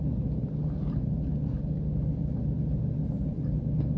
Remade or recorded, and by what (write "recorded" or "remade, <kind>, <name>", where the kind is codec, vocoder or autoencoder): recorded